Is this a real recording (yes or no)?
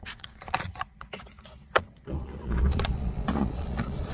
no